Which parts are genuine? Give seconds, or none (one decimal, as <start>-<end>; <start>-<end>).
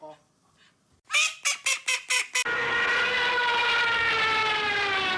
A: 0.0-5.2